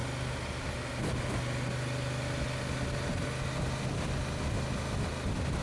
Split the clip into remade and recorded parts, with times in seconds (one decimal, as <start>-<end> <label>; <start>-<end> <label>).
0.0-5.6 recorded